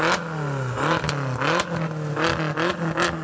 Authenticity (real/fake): real